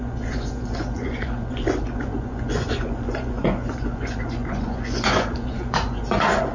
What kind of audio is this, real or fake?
fake